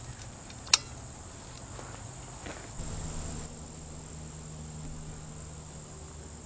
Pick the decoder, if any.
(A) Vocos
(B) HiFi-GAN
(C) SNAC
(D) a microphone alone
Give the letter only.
D